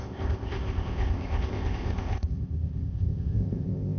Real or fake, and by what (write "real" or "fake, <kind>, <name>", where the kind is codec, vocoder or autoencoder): fake, codec, ZipCodec